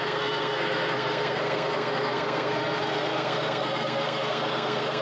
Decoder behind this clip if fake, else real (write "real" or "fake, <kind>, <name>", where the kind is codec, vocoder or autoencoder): fake, codec, SNAC